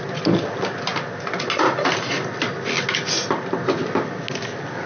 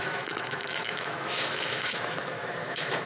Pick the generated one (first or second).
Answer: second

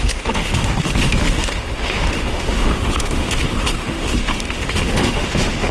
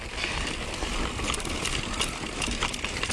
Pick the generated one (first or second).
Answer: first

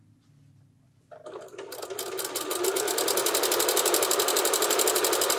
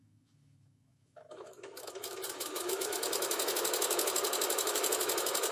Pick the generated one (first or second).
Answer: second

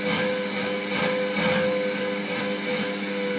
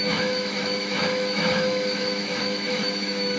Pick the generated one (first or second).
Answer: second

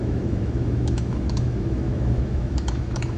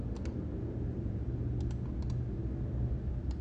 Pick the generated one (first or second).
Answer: first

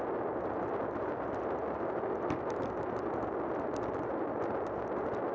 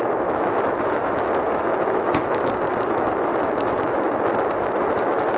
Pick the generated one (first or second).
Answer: second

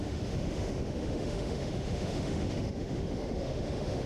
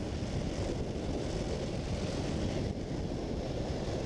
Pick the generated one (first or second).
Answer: first